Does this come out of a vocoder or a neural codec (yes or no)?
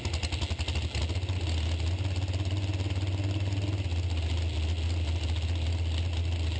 no